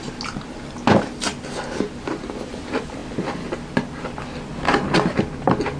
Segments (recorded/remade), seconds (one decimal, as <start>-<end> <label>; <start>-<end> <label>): 0.0-5.8 recorded